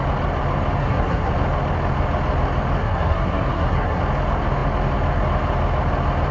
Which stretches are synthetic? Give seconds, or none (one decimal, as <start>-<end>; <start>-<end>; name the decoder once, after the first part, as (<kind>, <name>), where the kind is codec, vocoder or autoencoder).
0.8-1.3 (codec, SNAC); 2.8-4.0